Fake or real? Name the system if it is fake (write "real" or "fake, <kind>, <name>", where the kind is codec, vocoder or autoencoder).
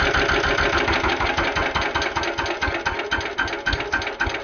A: real